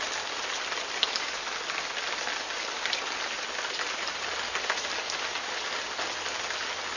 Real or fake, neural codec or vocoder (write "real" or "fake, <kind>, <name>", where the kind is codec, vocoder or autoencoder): real